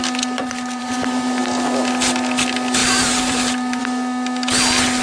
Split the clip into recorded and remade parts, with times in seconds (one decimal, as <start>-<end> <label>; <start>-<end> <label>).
0.0-0.4 recorded; 0.4-0.9 remade; 0.9-2.8 recorded; 2.8-3.8 remade; 3.8-5.0 recorded